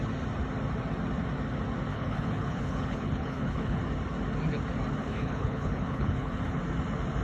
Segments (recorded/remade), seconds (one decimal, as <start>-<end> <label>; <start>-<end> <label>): 0.0-1.9 recorded; 1.9-3.8 remade; 3.8-5.0 recorded; 5.0-6.6 remade; 6.6-7.2 recorded